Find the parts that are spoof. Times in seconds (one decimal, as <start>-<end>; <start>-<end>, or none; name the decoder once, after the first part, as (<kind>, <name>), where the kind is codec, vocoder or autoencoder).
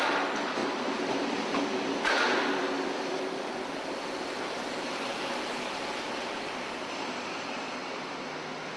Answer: 0.6-1.4 (vocoder, BigVGAN v2); 5.1-6.5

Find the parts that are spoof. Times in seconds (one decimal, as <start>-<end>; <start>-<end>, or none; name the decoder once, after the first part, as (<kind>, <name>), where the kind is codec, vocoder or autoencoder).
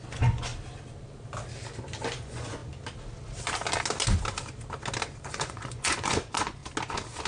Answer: 0.0-0.5 (vocoder, Vocos); 2.0-2.6; 5.2-6.6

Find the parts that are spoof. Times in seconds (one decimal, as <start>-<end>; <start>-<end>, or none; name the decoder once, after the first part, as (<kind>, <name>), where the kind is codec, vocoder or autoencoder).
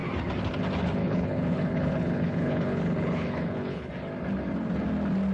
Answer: 1.0-3.9 (codec, HILCodec)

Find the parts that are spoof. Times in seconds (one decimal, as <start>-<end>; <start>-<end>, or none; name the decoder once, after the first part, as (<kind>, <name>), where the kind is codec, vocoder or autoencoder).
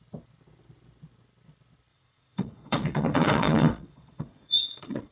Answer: 1.9-5.1 (vocoder, Vocos)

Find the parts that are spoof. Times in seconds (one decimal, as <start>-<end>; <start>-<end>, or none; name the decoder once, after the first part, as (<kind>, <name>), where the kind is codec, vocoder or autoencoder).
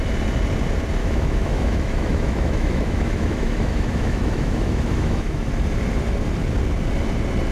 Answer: 1.0-5.5 (autoencoder, DAC-VAE)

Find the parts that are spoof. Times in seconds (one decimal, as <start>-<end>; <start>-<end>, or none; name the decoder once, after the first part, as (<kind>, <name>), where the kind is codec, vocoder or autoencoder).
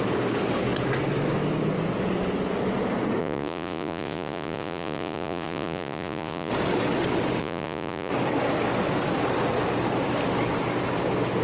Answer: 3.2-6.5 (vocoder, Vocos); 7.4-8.1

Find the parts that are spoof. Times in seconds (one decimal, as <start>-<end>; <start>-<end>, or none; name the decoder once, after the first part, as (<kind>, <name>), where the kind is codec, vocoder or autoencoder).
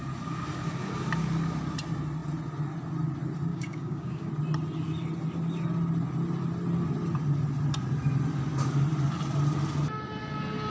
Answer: 3.5-4.3 (codec, DAC)